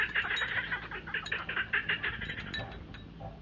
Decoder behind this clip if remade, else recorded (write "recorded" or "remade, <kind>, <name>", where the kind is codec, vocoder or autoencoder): recorded